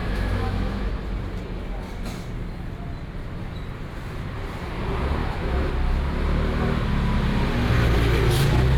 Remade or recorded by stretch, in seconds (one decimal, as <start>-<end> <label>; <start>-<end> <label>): 0.0-0.9 remade; 0.9-5.2 recorded; 5.2-5.7 remade; 5.7-8.8 recorded